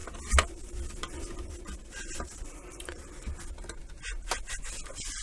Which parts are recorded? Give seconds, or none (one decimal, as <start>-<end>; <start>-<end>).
3.1-5.2